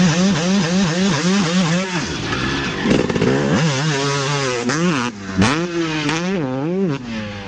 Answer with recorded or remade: recorded